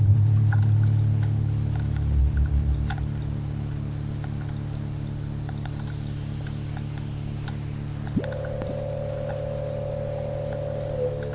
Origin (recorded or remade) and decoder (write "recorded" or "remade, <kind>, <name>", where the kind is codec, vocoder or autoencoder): recorded